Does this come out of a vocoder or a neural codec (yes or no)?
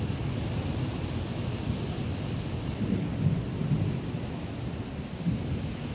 no